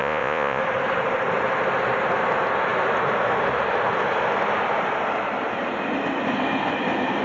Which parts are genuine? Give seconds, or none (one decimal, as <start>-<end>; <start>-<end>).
0.6-7.2